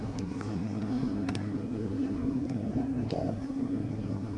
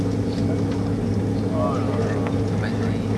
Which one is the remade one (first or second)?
first